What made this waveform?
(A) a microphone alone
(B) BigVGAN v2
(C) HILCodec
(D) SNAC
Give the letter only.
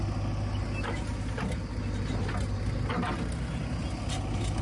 A